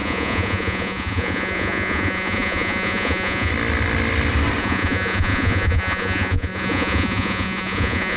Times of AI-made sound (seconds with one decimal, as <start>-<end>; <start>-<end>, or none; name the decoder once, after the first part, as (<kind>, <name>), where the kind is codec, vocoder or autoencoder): 0.0-3.5 (vocoder, Vocos); 4.6-8.2